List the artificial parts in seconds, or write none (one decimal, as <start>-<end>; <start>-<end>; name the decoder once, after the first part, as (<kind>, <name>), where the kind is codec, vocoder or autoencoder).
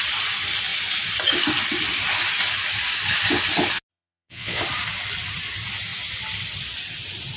3.9-4.6 (vocoder, Vocos)